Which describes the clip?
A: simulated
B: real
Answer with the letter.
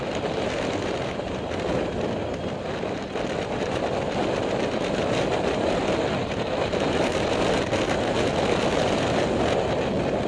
B